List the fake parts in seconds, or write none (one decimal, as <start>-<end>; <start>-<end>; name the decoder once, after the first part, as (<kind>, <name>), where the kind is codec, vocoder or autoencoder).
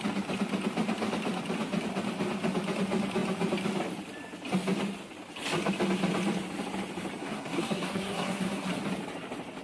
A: 7.2-8.7 (codec, SNAC)